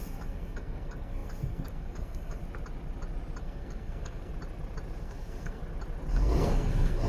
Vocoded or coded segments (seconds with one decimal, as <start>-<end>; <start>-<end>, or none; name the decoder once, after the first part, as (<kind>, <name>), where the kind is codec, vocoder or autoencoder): 0.0-2.4 (codec, SNAC); 3.4-4.3; 5.0-5.6; 6.1-7.1